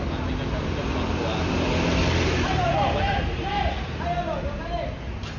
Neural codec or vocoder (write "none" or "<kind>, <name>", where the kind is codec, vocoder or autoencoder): none